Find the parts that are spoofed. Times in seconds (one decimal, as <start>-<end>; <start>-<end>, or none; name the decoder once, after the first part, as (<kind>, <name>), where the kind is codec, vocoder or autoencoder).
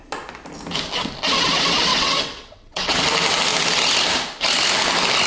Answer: 1.9-3.0 (vocoder, WaveNeXt)